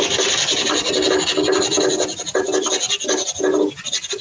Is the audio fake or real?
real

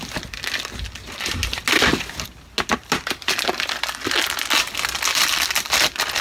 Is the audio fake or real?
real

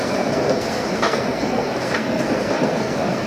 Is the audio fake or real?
fake